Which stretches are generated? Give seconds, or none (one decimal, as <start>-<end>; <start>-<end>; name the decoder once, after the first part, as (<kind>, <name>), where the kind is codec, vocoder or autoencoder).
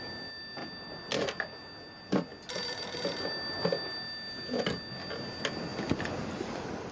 none